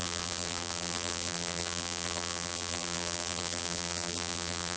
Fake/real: fake